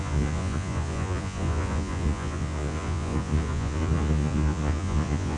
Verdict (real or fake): fake